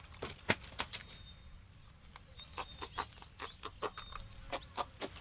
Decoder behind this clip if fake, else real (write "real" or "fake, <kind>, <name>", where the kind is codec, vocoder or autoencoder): real